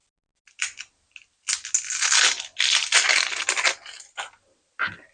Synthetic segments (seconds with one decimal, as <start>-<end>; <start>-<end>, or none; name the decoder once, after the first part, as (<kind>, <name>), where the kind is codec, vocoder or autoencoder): none